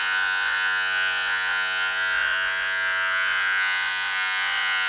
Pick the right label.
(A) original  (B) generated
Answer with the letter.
B